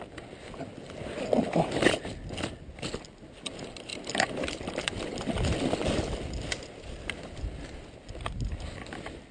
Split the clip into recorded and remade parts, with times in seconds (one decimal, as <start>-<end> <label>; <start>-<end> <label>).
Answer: 0.0-9.3 recorded